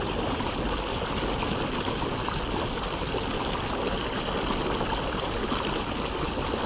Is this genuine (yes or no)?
yes